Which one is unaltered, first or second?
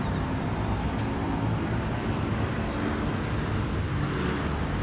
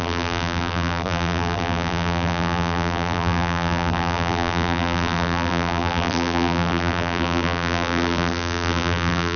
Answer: first